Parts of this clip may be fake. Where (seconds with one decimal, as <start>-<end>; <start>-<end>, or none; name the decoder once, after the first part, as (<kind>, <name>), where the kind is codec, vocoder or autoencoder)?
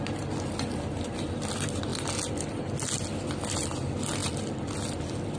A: none